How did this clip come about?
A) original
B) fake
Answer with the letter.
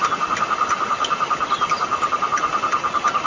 A